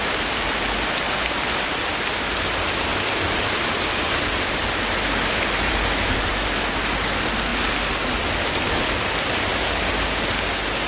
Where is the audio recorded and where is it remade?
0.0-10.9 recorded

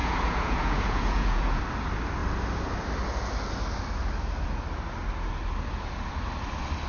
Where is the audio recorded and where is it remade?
0.0-1.6 remade; 1.6-6.9 recorded

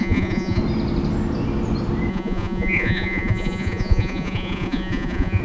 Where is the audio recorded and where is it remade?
0.0-0.6 remade; 0.6-2.1 recorded; 2.1-5.4 remade

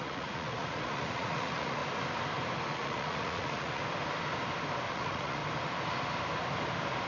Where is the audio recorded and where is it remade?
0.0-1.8 remade; 1.8-2.7 recorded; 2.7-3.8 remade; 3.8-4.9 recorded; 4.9-5.4 remade; 5.4-7.1 recorded

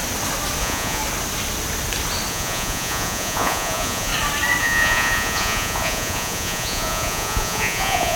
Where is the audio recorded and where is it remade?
0.0-0.6 recorded; 0.6-1.0 remade; 1.0-2.3 recorded; 2.3-4.1 remade; 4.1-4.6 recorded; 4.6-8.2 remade

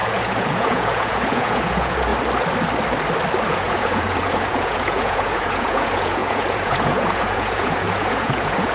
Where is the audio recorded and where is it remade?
0.0-2.1 remade; 2.1-3.5 recorded; 3.5-8.7 remade